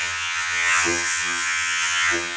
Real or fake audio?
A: fake